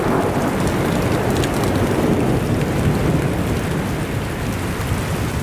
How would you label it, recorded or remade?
remade